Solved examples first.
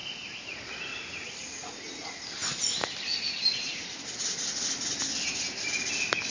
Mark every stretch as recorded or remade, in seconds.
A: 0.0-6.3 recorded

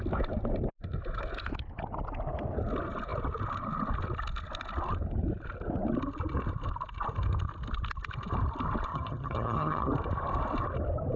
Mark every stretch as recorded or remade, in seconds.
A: 0.0-8.9 recorded; 8.9-9.9 remade; 9.9-11.2 recorded

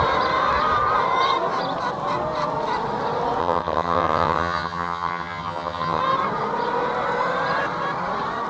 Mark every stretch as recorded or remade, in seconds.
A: 0.0-3.4 recorded; 3.4-6.0 remade; 6.0-8.5 recorded

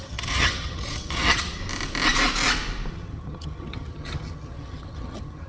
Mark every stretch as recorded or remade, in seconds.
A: 0.0-1.6 remade; 1.6-2.9 recorded; 2.9-5.5 remade

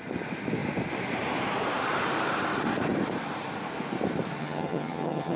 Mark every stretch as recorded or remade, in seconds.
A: 0.0-4.4 recorded; 4.4-5.4 remade

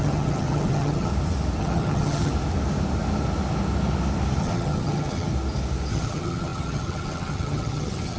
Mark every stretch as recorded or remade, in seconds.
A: 0.0-1.1 remade; 1.1-1.6 recorded; 1.6-2.3 remade; 2.3-4.4 recorded; 4.4-5.3 remade; 5.3-5.9 recorded; 5.9-8.2 remade